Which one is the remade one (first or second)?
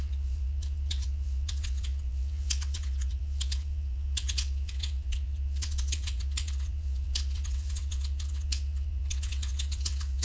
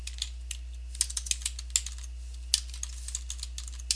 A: first